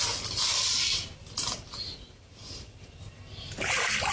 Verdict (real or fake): real